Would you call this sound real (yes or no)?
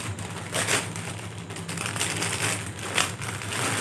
yes